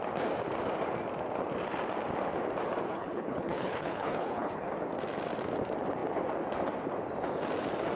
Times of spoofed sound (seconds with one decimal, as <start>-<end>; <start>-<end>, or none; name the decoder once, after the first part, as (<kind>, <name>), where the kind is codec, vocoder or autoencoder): 2.9-4.7 (codec, HILCodec)